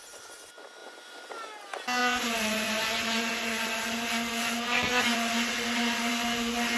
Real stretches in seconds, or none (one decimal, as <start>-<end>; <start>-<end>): 0.0-0.8; 1.3-2.0; 6.1-6.8